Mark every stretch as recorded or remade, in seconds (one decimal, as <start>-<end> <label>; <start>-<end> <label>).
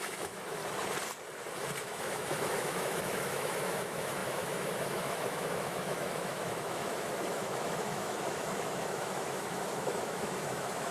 0.0-0.6 remade; 0.6-1.8 recorded; 1.8-10.9 remade